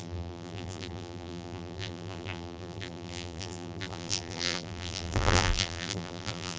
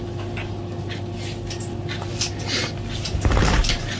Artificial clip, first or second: first